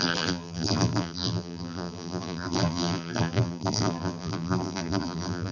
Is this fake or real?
fake